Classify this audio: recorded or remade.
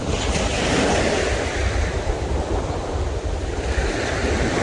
recorded